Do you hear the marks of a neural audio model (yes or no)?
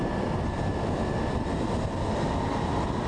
no